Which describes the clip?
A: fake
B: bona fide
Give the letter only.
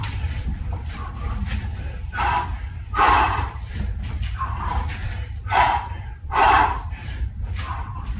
A